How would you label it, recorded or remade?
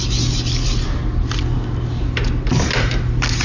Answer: recorded